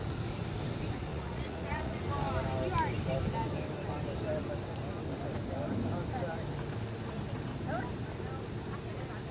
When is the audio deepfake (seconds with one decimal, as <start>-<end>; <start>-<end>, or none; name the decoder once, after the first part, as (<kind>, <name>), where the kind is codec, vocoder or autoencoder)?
1.1-2.0 (vocoder, Vocos)